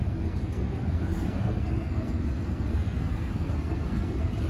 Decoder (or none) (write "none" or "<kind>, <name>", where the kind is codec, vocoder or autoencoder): codec, SNAC